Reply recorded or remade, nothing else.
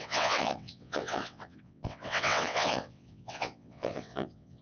remade